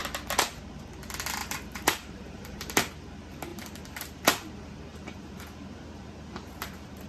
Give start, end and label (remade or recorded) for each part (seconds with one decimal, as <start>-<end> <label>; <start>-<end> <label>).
0.0-1.4 recorded; 1.4-2.9 remade; 2.9-3.5 recorded; 3.5-4.2 remade; 4.2-4.9 recorded; 4.9-7.1 remade